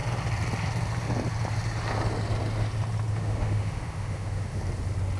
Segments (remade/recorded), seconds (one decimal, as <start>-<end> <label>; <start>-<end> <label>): 0.0-3.1 recorded; 3.1-4.6 remade; 4.6-5.2 recorded